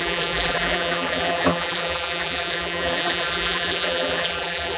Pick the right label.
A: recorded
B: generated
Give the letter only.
B